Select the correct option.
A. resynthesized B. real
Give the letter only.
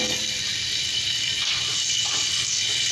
B